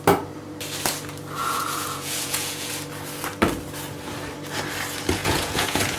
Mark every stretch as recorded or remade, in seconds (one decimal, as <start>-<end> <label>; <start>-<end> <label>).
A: 0.0-1.4 recorded; 1.4-2.7 remade; 2.7-5.2 recorded; 5.2-6.0 remade